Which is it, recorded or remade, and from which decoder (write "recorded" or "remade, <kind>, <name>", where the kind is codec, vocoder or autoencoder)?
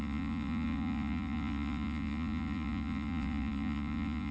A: remade, vocoder, Vocos